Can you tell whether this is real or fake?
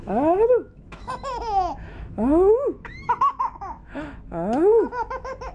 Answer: fake